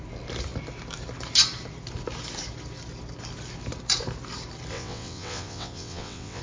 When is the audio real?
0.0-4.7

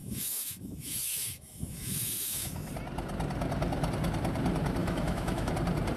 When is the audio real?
2.7-4.8; 5.5-6.0

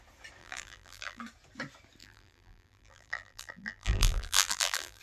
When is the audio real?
0.0-0.4; 1.2-2.0

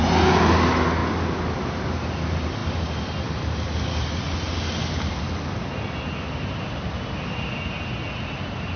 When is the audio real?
0.0-8.8

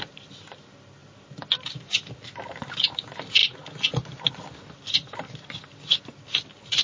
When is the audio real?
0.0-6.8